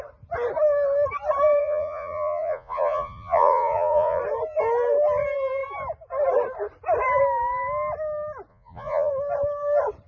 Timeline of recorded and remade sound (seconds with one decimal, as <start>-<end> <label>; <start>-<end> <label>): 0.0-1.6 recorded; 1.6-4.2 remade; 4.2-8.5 recorded; 8.5-9.1 remade; 9.1-10.1 recorded